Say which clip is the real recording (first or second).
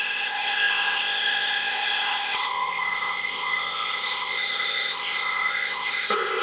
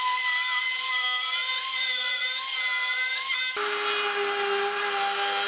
second